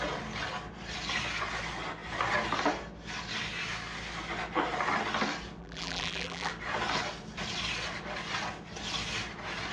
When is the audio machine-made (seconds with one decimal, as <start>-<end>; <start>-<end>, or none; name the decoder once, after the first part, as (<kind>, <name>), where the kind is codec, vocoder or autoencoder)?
5.6-6.5 (vocoder, BigVGAN v2)